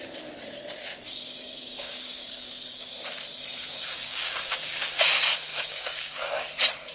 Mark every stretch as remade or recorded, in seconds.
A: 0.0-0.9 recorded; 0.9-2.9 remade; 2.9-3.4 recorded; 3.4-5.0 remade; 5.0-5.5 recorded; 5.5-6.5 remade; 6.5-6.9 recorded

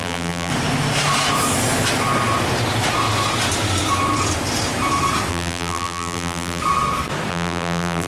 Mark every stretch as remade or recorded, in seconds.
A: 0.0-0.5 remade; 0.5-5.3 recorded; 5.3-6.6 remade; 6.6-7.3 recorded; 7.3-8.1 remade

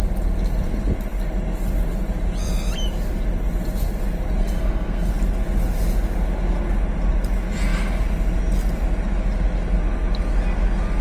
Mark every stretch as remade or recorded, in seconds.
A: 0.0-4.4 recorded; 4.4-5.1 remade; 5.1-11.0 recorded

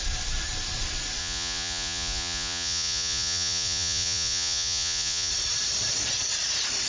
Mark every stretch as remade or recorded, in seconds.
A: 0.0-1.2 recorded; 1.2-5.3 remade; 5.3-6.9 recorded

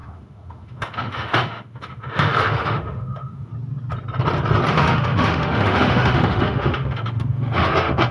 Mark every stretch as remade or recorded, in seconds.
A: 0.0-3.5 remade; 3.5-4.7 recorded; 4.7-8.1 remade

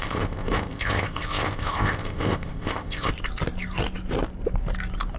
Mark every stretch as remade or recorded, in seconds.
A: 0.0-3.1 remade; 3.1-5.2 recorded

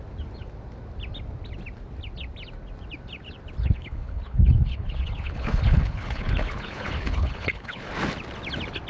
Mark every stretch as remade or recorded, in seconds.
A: 0.0-3.6 recorded; 3.6-7.9 remade; 7.9-8.9 recorded